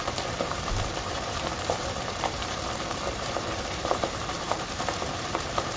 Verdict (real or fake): fake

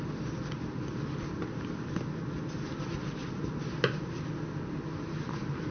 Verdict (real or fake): real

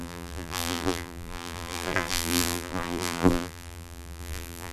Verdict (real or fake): fake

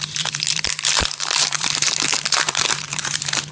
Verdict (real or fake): fake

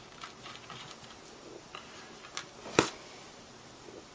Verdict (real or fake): real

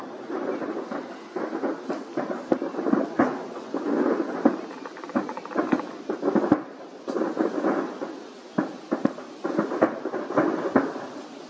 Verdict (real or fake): real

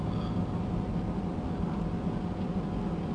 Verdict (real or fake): real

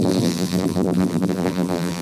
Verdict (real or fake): fake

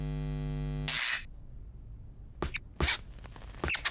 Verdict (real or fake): real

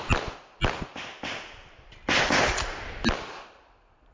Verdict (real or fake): real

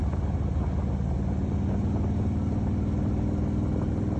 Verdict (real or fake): real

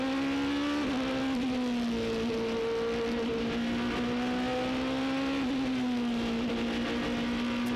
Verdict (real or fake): real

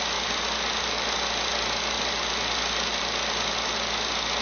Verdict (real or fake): real